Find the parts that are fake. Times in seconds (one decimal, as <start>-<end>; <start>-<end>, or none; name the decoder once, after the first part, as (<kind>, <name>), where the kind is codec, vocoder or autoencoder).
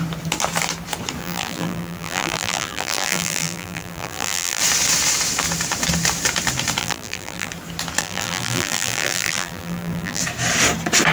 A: 1.2-4.6 (vocoder, BigVGAN v2); 6.8-7.5; 8.0-10.2